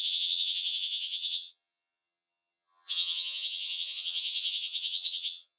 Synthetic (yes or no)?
yes